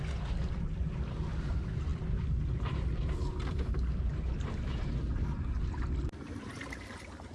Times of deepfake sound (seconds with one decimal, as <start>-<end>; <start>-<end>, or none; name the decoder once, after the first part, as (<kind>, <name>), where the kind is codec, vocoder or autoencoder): none